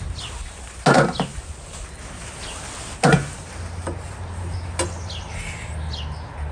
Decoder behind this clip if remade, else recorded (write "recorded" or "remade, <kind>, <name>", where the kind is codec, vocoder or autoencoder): recorded